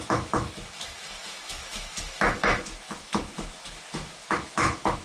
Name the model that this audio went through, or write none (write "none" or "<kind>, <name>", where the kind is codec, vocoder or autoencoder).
autoencoder, DAC-VAE